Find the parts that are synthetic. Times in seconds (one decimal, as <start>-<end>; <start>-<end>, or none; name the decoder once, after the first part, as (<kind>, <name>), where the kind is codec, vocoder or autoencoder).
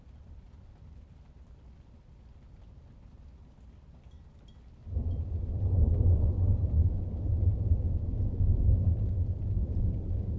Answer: 4.8-6.8 (vocoder, BigVGAN v2); 7.3-10.4